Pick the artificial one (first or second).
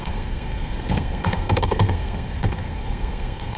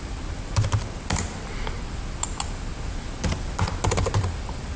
first